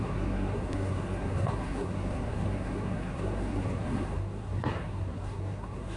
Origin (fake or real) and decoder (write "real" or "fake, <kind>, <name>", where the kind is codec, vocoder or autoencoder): fake, codec, SNAC